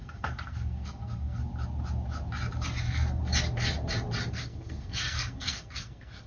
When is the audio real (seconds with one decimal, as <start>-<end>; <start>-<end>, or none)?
1.4-2.8; 3.2-4.3